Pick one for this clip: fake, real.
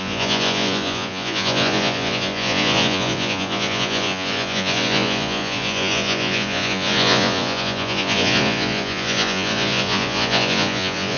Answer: fake